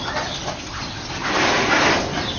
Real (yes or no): yes